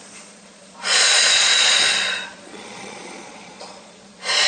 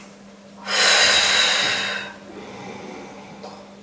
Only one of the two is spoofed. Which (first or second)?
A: first